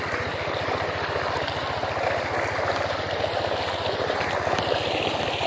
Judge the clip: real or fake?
real